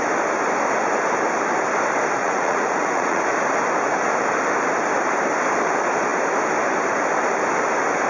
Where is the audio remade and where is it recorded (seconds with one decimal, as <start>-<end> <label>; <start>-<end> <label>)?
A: 0.0-2.2 recorded; 2.2-3.2 remade; 3.2-8.1 recorded